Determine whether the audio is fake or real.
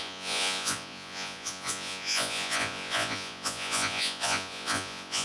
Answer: fake